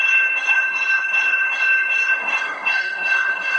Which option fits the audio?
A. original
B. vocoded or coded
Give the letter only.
B